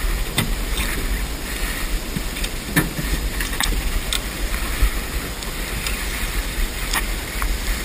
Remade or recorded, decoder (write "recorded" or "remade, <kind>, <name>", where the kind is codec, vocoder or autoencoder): recorded